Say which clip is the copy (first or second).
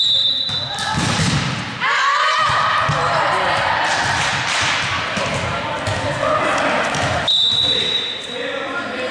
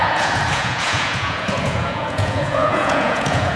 second